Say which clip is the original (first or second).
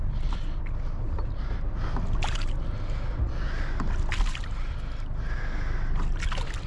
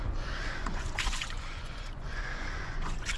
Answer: first